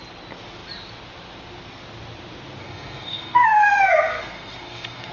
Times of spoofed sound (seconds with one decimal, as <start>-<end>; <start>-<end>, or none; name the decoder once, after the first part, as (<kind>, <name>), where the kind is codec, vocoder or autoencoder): 2.6-5.1 (codec, SNAC)